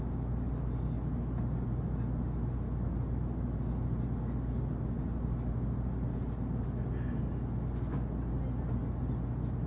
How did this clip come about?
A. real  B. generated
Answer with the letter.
A